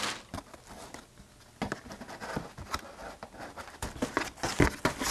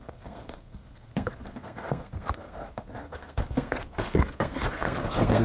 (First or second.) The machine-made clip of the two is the second